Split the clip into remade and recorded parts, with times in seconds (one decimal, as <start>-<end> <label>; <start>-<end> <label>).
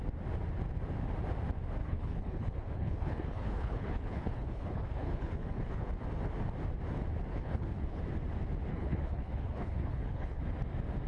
0.0-1.8 recorded; 1.8-5.9 remade; 5.9-7.3 recorded; 7.3-8.0 remade; 8.0-8.7 recorded; 8.7-10.4 remade; 10.4-11.1 recorded